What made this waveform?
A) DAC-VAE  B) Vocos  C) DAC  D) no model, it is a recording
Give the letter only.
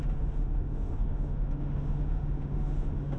A